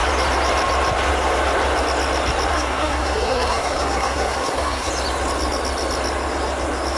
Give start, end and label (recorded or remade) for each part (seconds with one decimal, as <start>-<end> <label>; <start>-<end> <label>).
0.0-2.5 recorded; 2.5-4.9 remade; 4.9-7.0 recorded